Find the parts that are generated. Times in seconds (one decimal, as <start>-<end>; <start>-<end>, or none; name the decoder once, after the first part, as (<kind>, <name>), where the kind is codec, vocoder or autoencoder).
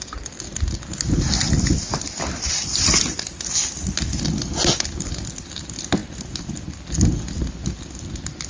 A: none